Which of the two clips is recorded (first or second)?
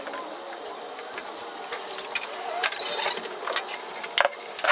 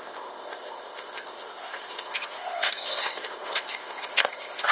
first